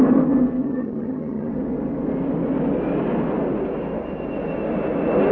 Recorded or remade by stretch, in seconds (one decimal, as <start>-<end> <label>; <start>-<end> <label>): 0.0-0.6 recorded; 0.6-1.5 remade; 1.5-5.3 recorded